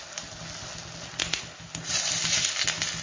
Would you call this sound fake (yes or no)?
no